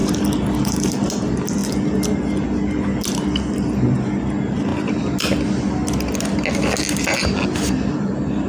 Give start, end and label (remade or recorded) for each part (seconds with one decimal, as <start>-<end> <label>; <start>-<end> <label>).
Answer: 0.0-1.1 remade; 1.1-8.5 recorded